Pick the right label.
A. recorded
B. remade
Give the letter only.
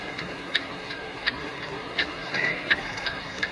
B